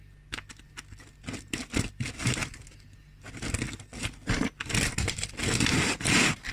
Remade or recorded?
recorded